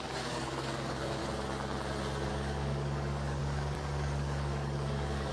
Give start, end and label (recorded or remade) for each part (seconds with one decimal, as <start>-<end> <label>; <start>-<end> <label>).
0.0-1.2 remade; 1.2-2.3 recorded; 2.3-5.3 remade